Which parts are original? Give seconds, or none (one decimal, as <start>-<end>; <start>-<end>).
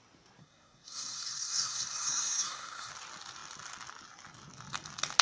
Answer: 0.0-0.4; 2.9-5.2